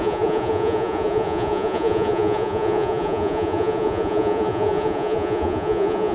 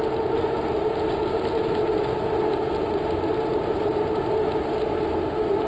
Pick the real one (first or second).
second